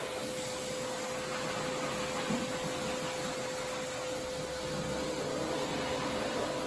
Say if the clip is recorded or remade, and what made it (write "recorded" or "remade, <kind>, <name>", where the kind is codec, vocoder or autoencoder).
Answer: recorded